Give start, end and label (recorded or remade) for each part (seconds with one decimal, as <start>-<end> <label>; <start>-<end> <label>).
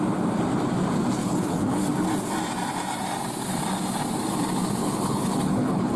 0.0-1.2 recorded; 1.2-1.8 remade; 1.8-4.8 recorded; 4.8-6.0 remade